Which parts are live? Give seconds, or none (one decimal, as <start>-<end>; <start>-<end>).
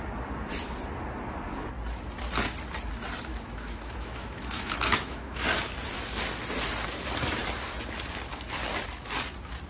0.0-3.3; 5.4-9.7